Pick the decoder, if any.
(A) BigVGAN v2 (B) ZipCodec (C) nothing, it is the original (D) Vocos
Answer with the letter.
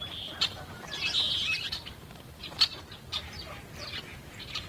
A